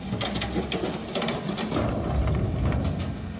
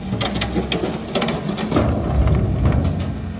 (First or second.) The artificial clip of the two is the first